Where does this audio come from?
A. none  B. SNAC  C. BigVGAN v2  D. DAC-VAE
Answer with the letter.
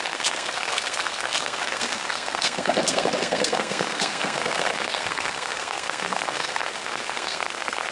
B